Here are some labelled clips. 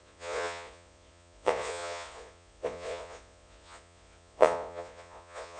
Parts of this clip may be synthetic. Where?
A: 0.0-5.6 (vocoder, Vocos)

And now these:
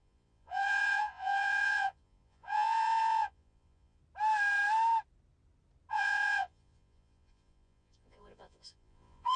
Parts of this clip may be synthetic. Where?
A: 0.0-4.0 (vocoder, Vocos); 5.9-9.4

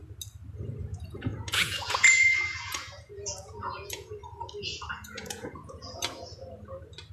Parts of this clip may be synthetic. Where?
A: 0.8-4.2 (vocoder, Vocos); 4.9-6.4

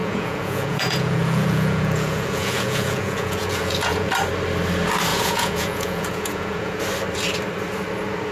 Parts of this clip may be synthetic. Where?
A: 0.0-4.1 (vocoder, Vocos); 5.1-6.8